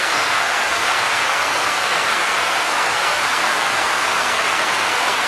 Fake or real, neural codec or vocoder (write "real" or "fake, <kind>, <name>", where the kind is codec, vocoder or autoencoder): fake, codec, SNAC